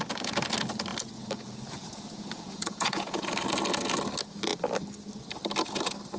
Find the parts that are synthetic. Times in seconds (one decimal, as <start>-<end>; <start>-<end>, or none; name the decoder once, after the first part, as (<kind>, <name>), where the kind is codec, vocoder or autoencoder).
1.9-3.3 (vocoder, Vocos)